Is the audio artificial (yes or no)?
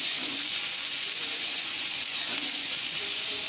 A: yes